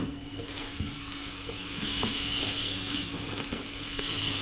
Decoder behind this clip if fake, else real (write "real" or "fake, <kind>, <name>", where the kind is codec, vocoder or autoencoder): fake, codec, SNAC